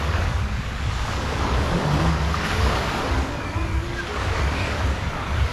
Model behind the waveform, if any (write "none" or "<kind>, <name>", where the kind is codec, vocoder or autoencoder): codec, DAC